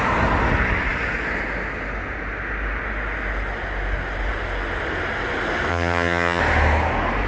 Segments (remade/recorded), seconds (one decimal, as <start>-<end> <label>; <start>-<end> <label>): 0.0-5.7 recorded; 5.7-6.4 remade; 6.4-7.3 recorded